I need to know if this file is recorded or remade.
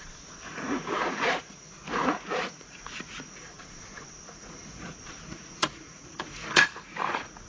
remade